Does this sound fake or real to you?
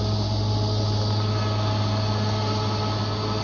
real